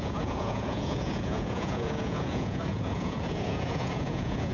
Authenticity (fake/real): fake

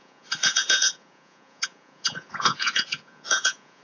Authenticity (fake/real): fake